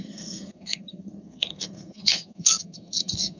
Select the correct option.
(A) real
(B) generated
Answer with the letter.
B